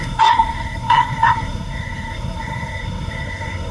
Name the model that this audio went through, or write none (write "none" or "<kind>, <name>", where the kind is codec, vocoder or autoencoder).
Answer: codec, SNAC